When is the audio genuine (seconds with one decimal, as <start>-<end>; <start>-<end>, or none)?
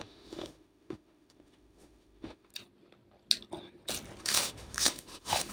2.5-4.2